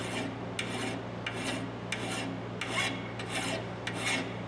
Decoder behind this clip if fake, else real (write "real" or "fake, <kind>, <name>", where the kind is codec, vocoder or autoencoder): real